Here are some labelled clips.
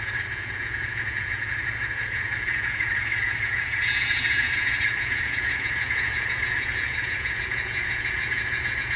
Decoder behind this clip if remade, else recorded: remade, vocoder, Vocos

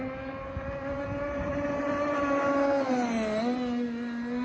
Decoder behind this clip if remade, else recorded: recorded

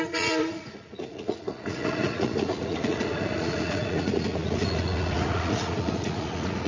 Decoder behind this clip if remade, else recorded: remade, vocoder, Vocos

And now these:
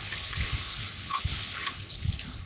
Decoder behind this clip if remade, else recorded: remade, codec, HILCodec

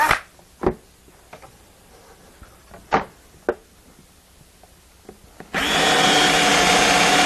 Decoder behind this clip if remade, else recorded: recorded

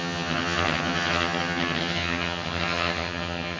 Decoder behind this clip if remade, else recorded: remade, vocoder, HiFi-GAN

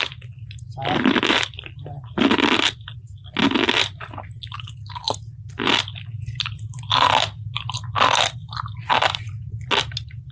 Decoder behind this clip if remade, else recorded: recorded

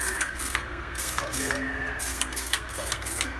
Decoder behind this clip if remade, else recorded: remade, codec, SNAC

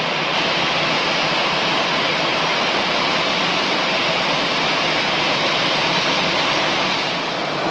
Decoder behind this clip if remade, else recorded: recorded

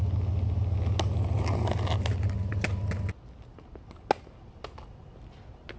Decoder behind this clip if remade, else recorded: recorded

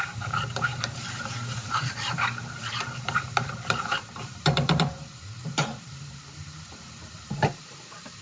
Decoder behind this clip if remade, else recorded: remade, vocoder, BigVGAN v2